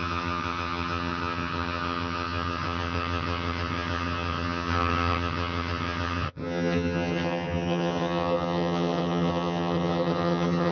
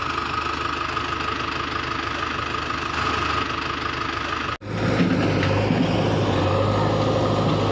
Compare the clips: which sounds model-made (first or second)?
first